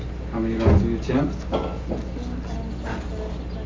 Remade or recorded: recorded